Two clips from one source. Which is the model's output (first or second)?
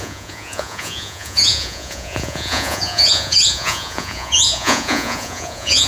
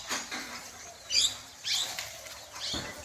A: first